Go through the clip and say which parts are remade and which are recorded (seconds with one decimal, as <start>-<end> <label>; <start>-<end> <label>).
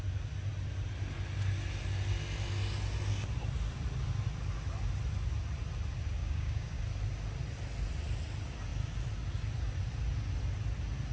0.0-6.2 recorded; 6.2-6.8 remade; 6.8-11.1 recorded